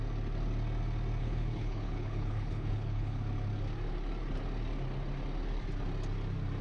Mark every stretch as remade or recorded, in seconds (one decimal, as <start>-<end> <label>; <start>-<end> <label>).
0.0-1.2 recorded; 1.2-3.2 remade; 3.2-6.6 recorded